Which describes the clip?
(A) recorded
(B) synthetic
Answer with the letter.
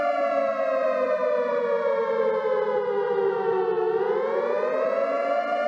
A